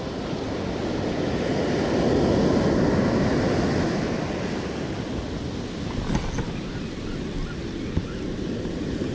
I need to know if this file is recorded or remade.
recorded